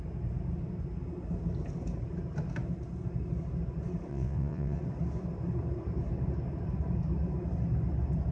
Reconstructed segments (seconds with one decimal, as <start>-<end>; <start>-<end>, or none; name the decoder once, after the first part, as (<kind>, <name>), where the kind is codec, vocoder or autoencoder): 4.1-4.8 (vocoder, WaveNeXt)